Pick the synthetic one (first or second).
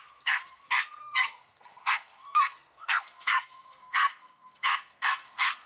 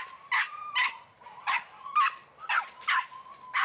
first